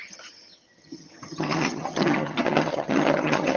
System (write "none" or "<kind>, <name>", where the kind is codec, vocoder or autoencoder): vocoder, HiFi-GAN